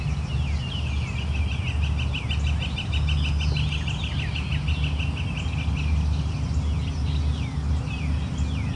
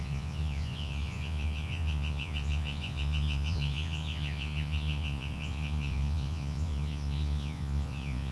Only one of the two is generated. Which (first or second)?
second